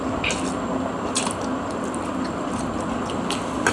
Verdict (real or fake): real